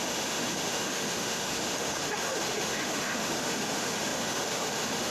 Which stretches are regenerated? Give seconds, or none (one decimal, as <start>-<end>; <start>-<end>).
0.0-5.1